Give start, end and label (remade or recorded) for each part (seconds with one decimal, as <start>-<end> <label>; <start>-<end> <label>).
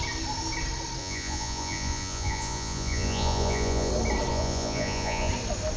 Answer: 0.0-1.0 recorded; 1.0-3.9 remade; 3.9-4.3 recorded; 4.3-5.3 remade; 5.3-5.8 recorded